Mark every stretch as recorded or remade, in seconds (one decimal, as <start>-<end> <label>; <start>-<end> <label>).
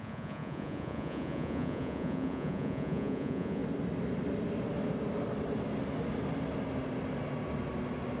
0.0-3.6 remade; 3.6-8.2 recorded